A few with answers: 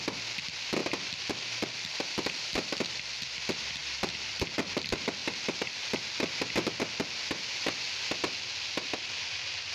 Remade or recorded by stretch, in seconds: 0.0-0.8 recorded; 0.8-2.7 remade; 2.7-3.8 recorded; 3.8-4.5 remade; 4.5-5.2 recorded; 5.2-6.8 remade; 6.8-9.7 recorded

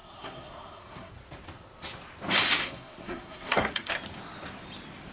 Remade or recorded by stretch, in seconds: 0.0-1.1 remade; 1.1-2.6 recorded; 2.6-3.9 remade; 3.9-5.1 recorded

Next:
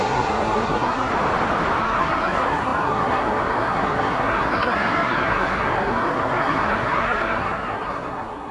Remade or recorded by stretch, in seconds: 0.0-1.1 remade; 1.1-1.8 recorded; 1.8-8.5 remade

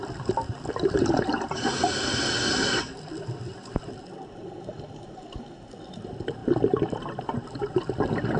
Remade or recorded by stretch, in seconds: 0.0-4.0 remade; 4.0-8.4 recorded